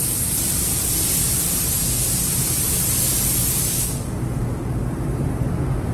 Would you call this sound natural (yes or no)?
yes